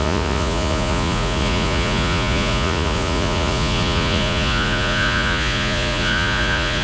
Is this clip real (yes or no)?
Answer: no